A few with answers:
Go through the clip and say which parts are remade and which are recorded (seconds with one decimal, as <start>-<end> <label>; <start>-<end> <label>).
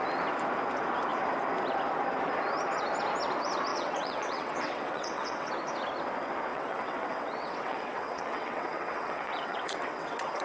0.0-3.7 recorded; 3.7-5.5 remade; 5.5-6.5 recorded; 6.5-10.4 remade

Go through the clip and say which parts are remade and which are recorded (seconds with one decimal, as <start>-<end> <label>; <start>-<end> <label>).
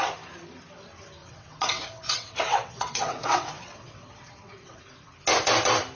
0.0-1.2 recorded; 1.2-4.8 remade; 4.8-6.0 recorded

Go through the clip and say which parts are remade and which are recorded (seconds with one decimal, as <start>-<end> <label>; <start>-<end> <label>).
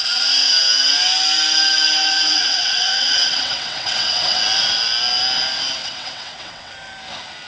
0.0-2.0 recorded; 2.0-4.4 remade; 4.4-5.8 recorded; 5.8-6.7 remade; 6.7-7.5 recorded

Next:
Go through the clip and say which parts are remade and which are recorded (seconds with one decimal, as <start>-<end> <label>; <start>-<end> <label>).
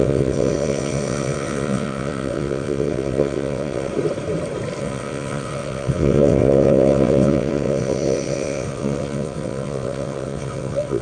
0.0-3.9 remade; 3.9-4.8 recorded; 4.8-11.0 remade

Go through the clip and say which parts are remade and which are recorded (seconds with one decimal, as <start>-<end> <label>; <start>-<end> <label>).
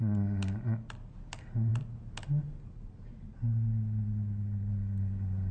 0.0-5.5 recorded